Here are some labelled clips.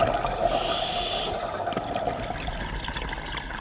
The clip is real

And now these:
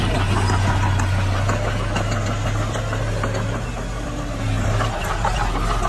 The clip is real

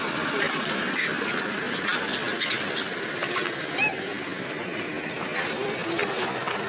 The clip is real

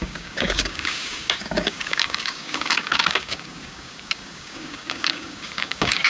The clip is fake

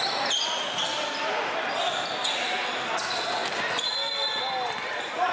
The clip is real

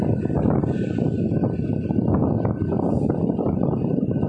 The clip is real